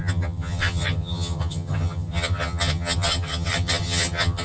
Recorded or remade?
remade